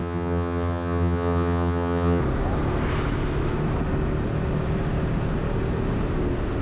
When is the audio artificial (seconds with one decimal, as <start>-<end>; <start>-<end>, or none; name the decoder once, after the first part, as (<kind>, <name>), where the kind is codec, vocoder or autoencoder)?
0.0-2.2 (vocoder, HiFi-GAN)